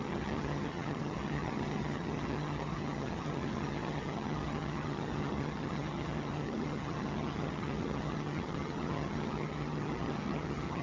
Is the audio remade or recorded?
remade